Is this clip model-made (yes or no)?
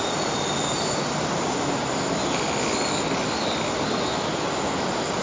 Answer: no